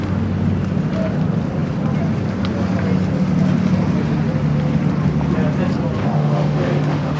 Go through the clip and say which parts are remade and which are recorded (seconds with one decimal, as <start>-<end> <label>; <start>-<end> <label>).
0.0-6.0 recorded; 6.0-7.2 remade